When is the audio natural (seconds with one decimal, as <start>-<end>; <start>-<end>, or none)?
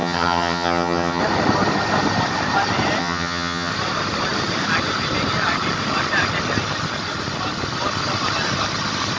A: 1.2-3.0; 3.7-9.2